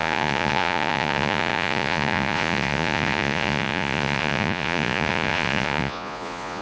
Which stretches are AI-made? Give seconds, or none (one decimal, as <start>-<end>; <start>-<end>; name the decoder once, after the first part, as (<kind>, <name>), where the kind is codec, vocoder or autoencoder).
0.0-6.6 (vocoder, Vocos)